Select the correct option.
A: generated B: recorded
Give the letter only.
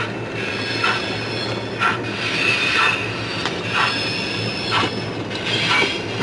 B